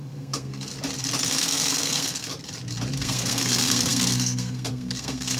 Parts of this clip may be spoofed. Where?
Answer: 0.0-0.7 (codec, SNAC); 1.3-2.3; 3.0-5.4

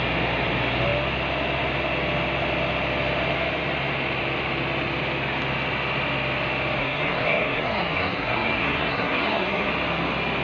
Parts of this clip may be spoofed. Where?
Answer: 6.8-9.7 (codec, SNAC)

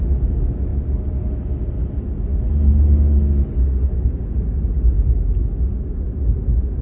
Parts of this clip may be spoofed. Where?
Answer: none

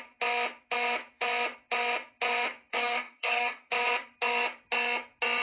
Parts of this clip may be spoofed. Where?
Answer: 2.7-3.7 (codec, DAC)